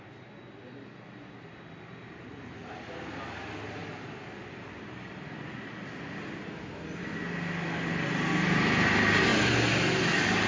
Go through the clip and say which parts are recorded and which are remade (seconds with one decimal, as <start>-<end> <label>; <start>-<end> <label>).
0.0-10.5 recorded